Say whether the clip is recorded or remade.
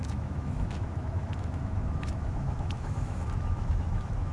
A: remade